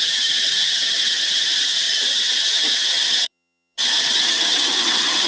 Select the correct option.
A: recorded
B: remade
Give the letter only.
B